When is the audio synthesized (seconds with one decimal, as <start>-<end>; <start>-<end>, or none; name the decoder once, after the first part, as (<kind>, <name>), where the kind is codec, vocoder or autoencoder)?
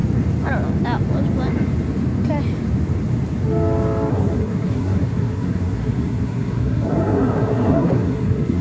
4.1-8.6 (codec, SNAC)